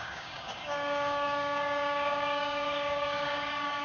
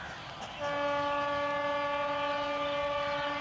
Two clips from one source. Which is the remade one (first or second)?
first